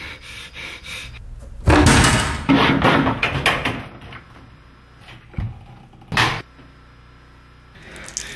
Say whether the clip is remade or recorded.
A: recorded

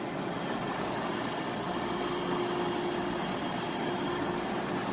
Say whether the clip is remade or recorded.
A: recorded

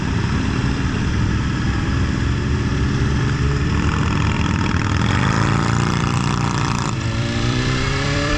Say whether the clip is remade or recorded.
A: remade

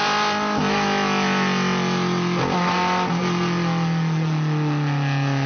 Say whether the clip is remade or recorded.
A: recorded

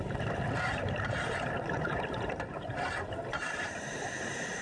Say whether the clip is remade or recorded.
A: remade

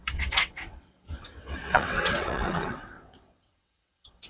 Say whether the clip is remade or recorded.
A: remade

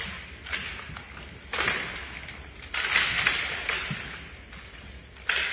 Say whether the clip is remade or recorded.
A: recorded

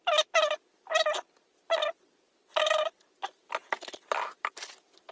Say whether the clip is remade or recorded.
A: recorded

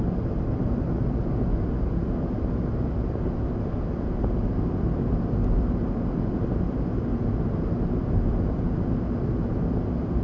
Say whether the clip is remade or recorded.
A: recorded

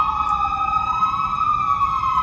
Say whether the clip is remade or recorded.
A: remade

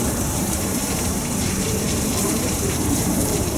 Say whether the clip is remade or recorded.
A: remade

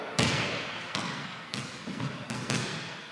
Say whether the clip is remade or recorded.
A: remade